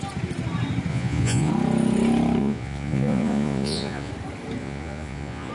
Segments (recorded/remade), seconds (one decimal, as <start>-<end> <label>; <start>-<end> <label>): 0.0-0.9 recorded; 0.9-1.5 remade; 1.5-2.4 recorded; 2.4-4.1 remade; 4.1-4.6 recorded; 4.6-5.5 remade